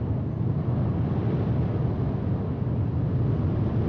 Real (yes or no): yes